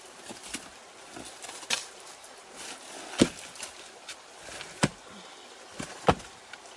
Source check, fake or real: real